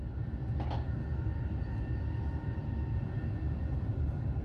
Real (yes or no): yes